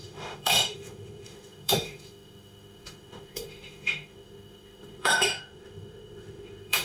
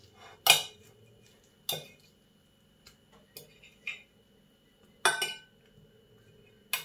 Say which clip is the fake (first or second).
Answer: first